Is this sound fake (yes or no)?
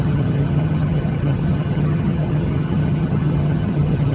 yes